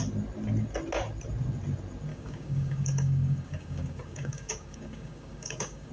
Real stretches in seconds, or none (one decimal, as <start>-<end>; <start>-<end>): 0.0-2.1